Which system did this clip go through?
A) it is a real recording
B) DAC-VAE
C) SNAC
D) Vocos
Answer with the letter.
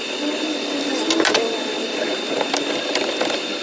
A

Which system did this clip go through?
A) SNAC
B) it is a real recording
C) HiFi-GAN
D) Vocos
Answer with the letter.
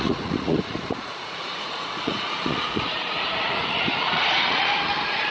D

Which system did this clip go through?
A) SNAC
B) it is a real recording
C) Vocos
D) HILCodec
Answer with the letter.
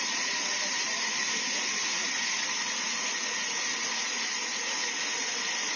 C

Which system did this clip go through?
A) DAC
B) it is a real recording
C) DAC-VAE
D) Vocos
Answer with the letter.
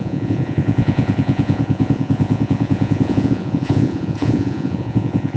D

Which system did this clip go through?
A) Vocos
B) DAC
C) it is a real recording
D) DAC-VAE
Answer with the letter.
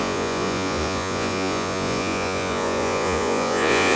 A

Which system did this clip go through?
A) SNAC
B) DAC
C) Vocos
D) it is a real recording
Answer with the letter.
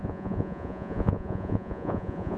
C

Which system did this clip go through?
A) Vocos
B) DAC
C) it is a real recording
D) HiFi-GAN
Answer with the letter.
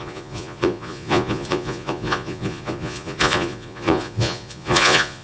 A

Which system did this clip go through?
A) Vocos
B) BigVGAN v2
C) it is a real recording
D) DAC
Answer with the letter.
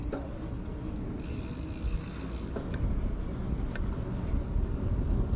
C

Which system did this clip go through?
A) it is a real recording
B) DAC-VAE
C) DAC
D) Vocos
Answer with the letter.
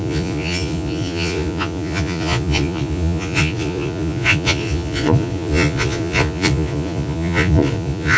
D